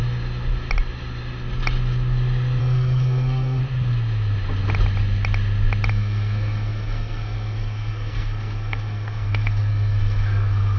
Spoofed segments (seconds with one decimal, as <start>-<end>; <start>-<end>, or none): 2.6-3.6; 5.9-10.8